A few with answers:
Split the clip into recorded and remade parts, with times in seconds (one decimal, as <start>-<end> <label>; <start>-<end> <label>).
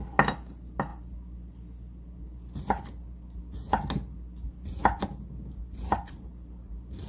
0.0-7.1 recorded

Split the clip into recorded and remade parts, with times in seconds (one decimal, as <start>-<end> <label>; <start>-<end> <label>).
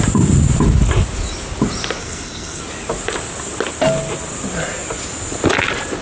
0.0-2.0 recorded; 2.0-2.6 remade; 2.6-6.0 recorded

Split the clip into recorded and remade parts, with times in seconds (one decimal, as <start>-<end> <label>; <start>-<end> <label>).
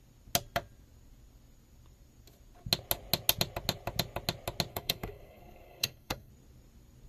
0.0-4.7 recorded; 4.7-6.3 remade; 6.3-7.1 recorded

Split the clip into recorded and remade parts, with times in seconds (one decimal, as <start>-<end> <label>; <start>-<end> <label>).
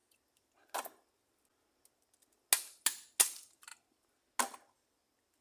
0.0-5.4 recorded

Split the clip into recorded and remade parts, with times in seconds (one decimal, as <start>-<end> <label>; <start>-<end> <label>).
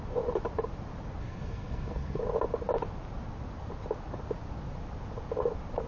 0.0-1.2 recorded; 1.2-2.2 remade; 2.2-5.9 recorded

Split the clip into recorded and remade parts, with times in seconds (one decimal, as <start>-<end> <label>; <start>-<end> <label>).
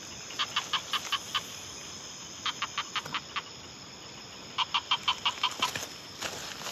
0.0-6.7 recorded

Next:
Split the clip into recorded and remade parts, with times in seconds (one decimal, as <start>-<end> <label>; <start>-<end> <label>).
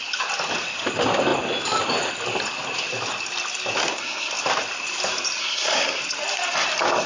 0.0-3.8 recorded; 3.8-4.3 remade; 4.3-5.4 recorded; 5.4-6.0 remade; 6.0-7.1 recorded